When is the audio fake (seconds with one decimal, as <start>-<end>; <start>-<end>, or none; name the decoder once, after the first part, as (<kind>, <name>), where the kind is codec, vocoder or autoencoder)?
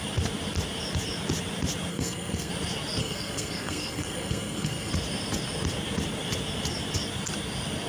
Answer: 1.9-2.5 (codec, SNAC); 3.0-4.9